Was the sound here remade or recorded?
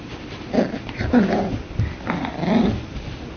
recorded